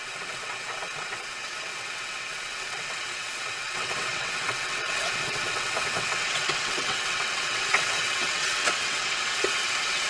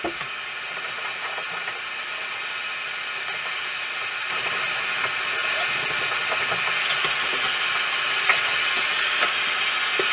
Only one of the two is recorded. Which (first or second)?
second